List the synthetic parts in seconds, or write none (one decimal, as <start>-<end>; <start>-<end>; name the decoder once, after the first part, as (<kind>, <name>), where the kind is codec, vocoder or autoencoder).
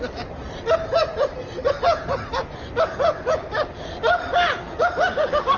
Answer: none